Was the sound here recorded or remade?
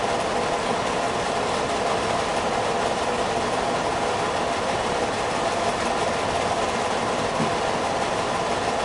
recorded